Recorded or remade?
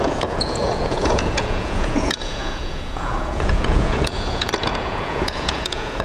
remade